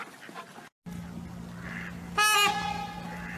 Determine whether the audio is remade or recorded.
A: recorded